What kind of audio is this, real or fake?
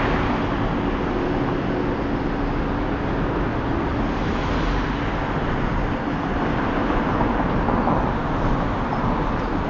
real